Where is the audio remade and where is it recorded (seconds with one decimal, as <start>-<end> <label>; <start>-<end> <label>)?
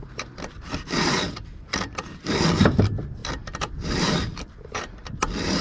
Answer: 0.0-5.6 remade